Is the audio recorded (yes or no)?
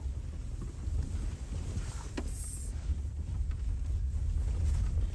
yes